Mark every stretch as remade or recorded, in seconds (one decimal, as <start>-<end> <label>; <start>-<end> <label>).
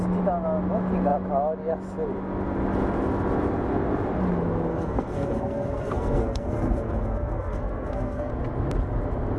0.0-4.7 recorded; 4.7-8.3 remade; 8.3-9.4 recorded